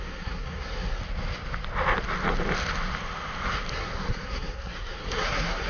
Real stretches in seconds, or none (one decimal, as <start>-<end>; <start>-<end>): 1.0-3.7